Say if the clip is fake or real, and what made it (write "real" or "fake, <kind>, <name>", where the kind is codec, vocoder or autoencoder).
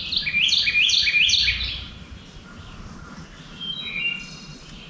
real